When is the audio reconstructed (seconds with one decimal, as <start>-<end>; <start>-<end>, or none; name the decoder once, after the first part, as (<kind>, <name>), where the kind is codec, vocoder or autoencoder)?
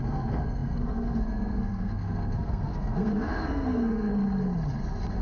0.0-4.1 (codec, SNAC)